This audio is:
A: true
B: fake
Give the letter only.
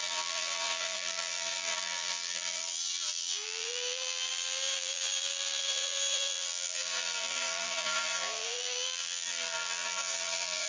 B